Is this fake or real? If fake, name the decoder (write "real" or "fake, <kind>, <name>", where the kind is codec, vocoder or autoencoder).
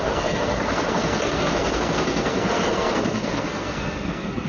fake, codec, SNAC